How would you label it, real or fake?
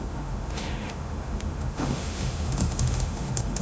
fake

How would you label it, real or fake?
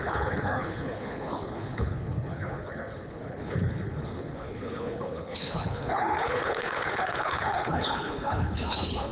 fake